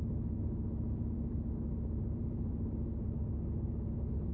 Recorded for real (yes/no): yes